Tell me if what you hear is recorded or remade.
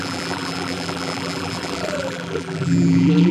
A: remade